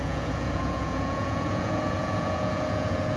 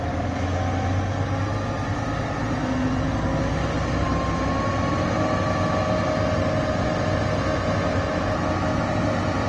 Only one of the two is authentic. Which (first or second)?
second